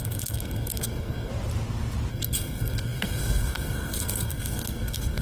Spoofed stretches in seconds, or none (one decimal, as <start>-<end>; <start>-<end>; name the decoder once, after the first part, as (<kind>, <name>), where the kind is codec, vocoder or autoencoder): 0.0-1.3 (codec, SNAC); 2.1-5.2